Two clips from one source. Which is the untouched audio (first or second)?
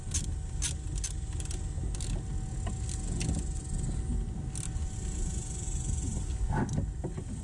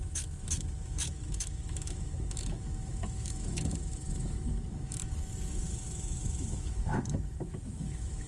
first